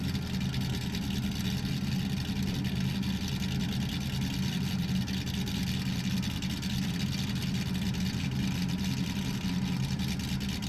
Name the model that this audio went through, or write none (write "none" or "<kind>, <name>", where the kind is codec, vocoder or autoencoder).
none